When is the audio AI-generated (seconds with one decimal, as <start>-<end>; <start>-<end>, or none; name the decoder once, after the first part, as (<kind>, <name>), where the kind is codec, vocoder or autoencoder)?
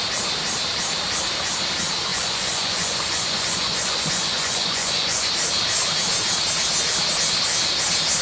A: 2.1-5.3 (vocoder, Vocos)